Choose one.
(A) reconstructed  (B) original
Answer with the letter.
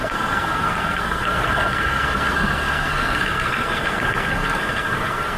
A